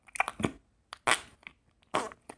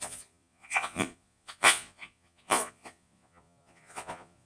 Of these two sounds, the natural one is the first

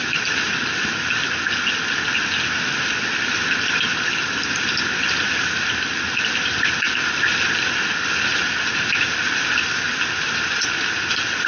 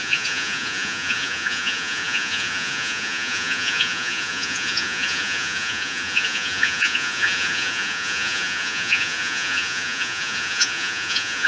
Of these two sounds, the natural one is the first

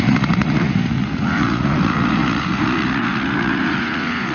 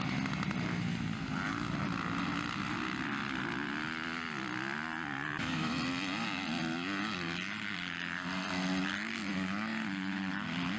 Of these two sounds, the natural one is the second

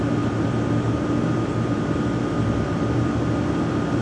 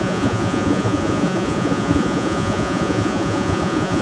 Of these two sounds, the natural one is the first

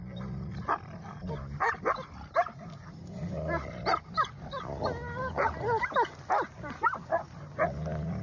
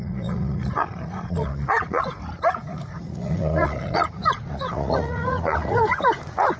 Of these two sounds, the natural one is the first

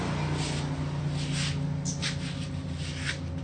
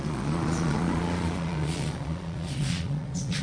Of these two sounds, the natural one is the first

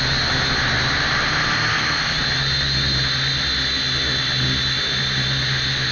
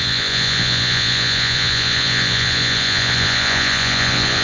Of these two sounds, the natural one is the first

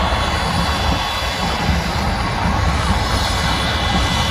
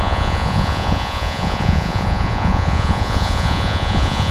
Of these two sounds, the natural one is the first